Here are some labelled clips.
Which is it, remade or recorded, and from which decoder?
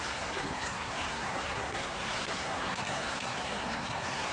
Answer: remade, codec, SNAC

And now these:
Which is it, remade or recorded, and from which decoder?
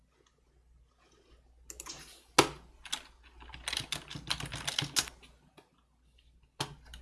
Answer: recorded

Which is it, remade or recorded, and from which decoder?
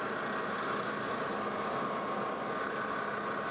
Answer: recorded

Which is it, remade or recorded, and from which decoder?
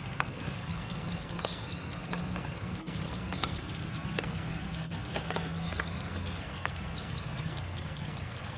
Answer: remade, codec, SNAC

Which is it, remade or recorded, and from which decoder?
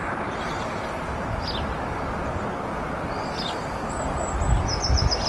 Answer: recorded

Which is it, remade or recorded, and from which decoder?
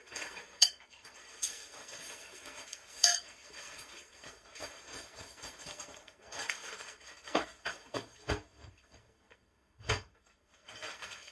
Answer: remade, codec, SNAC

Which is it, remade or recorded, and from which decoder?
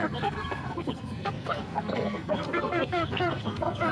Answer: remade, codec, SNAC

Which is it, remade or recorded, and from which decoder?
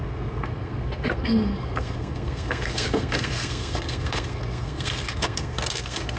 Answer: remade, codec, SNAC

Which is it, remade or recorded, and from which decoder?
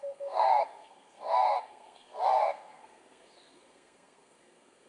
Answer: remade, codec, SNAC